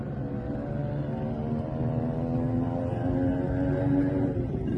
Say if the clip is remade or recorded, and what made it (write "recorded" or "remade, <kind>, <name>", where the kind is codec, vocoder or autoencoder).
recorded